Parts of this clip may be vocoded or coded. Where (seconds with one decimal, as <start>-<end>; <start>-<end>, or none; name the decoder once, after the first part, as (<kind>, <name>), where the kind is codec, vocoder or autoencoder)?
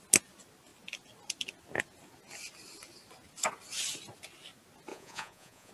4.9-5.7 (vocoder, Vocos)